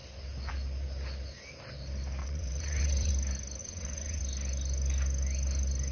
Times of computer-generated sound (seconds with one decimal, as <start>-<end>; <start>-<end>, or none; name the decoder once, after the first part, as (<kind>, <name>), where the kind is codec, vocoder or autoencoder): 2.2-3.1 (vocoder, WaveNeXt); 3.6-4.2